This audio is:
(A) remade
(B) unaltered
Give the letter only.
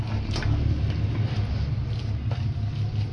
B